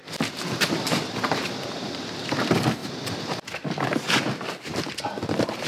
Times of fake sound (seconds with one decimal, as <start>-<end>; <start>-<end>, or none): 0.0-5.7